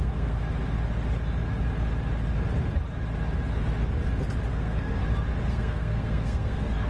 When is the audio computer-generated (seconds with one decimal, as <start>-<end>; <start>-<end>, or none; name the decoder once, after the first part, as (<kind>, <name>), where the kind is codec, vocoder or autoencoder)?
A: 0.0-0.4 (codec, SNAC); 4.5-5.0; 5.5-6.9